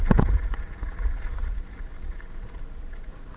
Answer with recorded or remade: remade